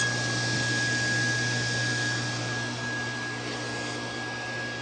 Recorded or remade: recorded